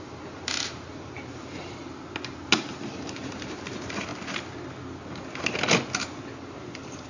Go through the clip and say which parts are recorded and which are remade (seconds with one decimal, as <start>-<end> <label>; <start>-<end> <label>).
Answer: 0.0-1.8 remade; 1.8-2.9 recorded; 2.9-4.1 remade; 4.1-6.5 recorded; 6.5-7.1 remade